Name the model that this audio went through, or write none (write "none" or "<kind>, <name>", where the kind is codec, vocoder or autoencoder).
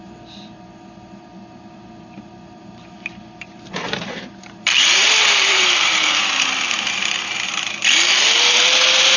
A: vocoder, BigVGAN v2